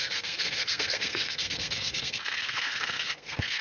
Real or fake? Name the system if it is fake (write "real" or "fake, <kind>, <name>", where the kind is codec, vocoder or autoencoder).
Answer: fake, codec, SNAC